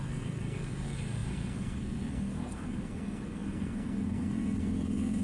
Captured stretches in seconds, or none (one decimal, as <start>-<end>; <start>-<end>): none